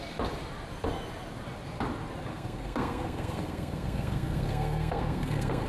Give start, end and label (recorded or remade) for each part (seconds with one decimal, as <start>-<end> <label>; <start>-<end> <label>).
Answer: 0.0-2.3 recorded; 2.3-5.7 remade